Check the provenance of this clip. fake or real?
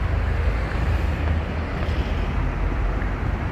real